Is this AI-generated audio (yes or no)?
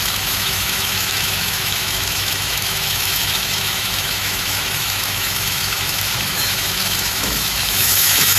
yes